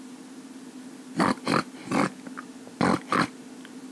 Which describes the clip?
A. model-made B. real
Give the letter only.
B